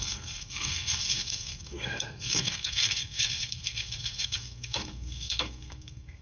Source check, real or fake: fake